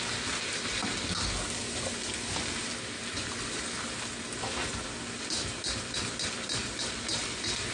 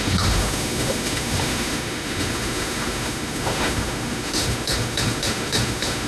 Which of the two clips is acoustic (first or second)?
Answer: first